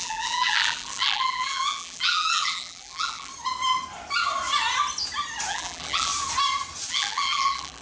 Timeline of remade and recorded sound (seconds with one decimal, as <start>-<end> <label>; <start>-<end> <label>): 0.0-3.3 remade; 3.3-5.5 recorded; 5.5-6.1 remade; 6.1-6.9 recorded; 6.9-7.8 remade